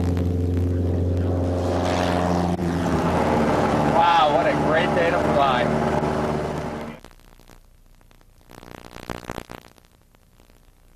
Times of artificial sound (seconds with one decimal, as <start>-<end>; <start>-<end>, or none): 2.6-4.8